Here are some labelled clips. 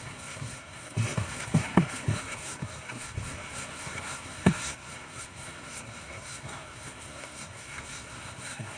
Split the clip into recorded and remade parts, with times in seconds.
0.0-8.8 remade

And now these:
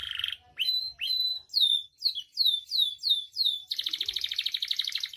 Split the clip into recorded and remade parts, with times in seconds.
0.0-3.1 recorded; 3.1-5.2 remade

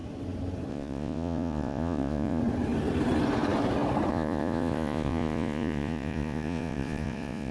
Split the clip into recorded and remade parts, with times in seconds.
0.0-0.7 recorded; 0.7-2.4 remade; 2.4-4.1 recorded; 4.1-7.5 remade

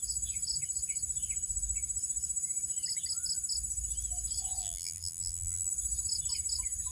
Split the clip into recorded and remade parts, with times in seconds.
0.0-4.6 recorded; 4.6-5.7 remade; 5.7-6.9 recorded

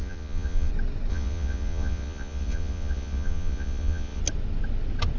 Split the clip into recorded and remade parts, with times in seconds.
0.0-0.7 remade; 0.7-1.1 recorded; 1.1-4.2 remade; 4.2-5.2 recorded

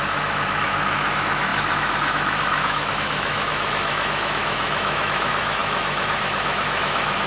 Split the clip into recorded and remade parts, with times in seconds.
0.0-7.3 remade

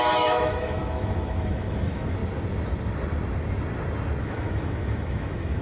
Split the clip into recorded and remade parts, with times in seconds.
0.0-2.2 remade; 2.2-4.2 recorded; 4.2-5.6 remade